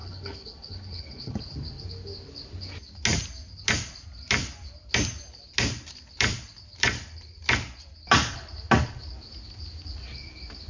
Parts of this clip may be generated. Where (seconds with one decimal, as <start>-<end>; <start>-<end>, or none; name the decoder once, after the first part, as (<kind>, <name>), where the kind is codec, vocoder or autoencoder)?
0.0-1.4 (codec, HILCodec)